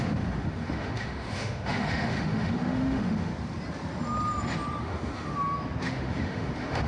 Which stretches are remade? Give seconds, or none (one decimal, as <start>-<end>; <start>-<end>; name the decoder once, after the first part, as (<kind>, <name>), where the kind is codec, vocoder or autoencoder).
0.0-3.3 (autoencoder, DAC-VAE); 4.8-5.3; 5.9-6.9